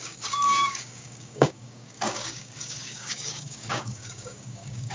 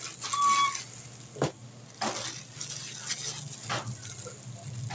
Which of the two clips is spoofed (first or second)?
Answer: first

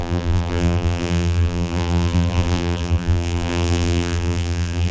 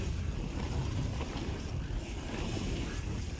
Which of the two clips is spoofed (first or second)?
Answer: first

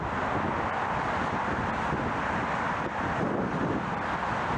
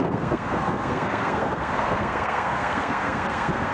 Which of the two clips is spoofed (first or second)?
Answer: second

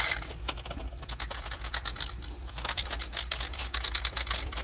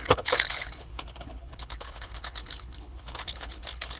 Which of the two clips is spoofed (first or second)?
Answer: second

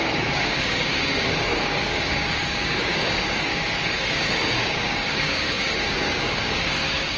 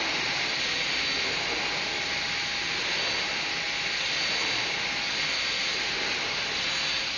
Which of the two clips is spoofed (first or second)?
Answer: first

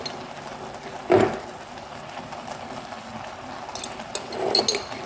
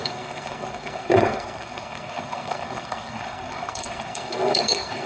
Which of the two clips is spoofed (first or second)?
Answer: second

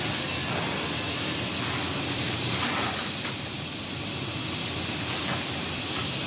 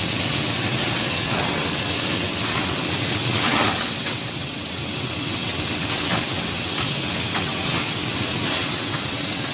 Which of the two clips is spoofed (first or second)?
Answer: second